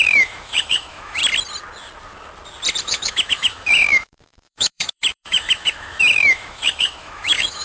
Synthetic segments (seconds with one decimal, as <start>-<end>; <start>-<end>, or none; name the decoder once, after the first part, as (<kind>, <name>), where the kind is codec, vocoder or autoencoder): 0.0-1.2 (autoencoder, DAC-VAE); 2.8-7.6